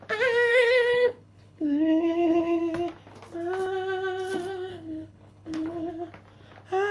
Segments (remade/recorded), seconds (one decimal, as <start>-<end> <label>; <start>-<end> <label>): 0.0-0.5 recorded; 0.5-2.6 remade; 2.6-4.7 recorded; 4.7-5.9 remade; 5.9-6.9 recorded

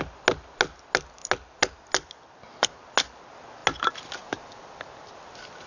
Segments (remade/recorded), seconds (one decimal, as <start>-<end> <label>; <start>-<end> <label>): 0.0-5.7 recorded

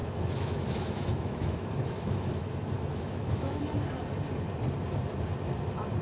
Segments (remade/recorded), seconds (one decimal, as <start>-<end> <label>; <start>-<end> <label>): 0.0-3.6 remade; 3.6-6.0 recorded

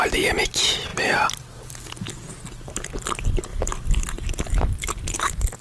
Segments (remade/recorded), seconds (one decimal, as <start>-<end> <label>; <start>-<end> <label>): 0.0-3.5 recorded; 3.5-5.6 remade

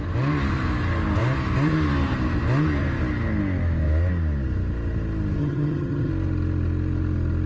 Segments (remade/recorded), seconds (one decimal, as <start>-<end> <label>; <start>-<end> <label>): 0.0-5.4 recorded; 5.4-6.1 remade; 6.1-7.5 recorded

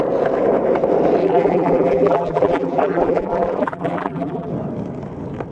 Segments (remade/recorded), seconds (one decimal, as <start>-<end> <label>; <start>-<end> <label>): 0.0-1.2 recorded; 1.2-4.5 remade; 4.5-5.5 recorded

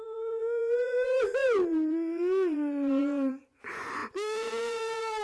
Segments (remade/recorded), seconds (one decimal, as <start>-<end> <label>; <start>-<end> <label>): 0.0-5.2 remade